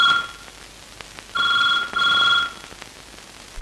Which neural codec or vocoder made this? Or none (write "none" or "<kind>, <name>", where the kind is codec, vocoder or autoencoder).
none